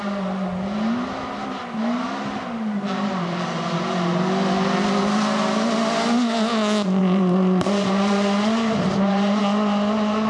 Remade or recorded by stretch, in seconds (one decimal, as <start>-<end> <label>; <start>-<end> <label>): 0.0-7.0 recorded; 7.0-9.4 remade; 9.4-10.3 recorded

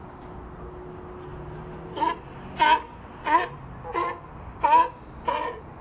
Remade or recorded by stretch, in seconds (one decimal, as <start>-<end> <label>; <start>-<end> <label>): 0.0-5.8 recorded

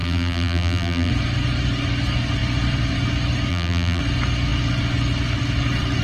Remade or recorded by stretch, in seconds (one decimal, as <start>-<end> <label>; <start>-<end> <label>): 0.0-1.1 remade; 1.1-3.5 recorded; 3.5-4.0 remade; 4.0-6.0 recorded

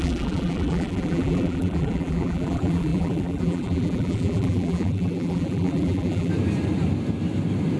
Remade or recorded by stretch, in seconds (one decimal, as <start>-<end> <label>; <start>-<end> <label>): 0.0-6.3 remade; 6.3-7.8 recorded

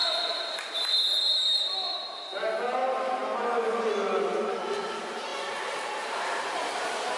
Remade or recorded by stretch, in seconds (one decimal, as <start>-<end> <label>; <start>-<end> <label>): 0.0-0.9 remade; 0.9-7.2 recorded

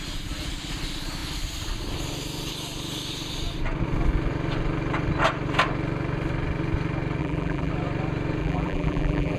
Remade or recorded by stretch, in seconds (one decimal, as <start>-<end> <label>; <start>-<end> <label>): 0.0-7.2 recorded; 7.2-7.7 remade; 7.7-8.4 recorded; 8.4-9.4 remade

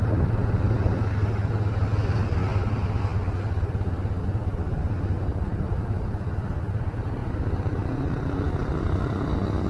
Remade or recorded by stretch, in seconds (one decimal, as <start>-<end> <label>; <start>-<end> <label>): 0.0-2.4 recorded; 2.4-3.0 remade; 3.0-4.5 recorded; 4.5-5.9 remade; 5.9-9.7 recorded